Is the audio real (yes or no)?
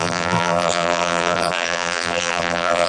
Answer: no